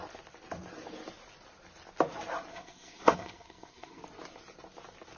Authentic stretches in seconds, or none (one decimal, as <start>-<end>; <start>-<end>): 0.0-2.5; 4.0-5.2